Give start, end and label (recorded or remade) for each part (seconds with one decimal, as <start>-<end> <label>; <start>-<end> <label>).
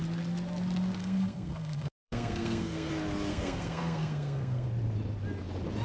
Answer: 0.0-1.0 recorded; 1.0-2.9 remade; 2.9-3.3 recorded; 3.3-4.7 remade; 4.7-5.8 recorded